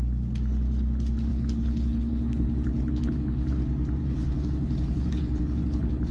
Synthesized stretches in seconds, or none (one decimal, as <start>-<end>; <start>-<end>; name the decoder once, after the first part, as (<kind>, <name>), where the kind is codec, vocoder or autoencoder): 1.3-3.6 (codec, HILCodec); 4.0-6.1

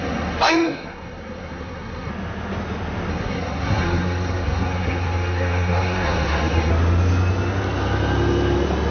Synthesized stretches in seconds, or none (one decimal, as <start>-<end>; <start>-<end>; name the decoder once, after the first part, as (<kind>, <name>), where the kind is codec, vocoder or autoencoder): 0.0-2.1 (codec, SNAC); 3.1-6.7

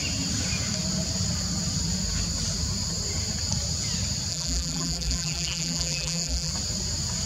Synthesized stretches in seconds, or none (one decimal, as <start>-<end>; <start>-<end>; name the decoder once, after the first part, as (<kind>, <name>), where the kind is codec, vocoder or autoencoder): 4.3-6.5 (vocoder, BigVGAN v2)

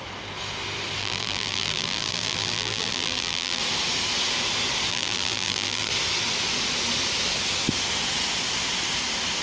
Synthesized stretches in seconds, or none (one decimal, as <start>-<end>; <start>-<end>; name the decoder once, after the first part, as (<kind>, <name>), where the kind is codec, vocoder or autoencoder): 1.0-3.6 (vocoder, BigVGAN v2); 4.9-5.9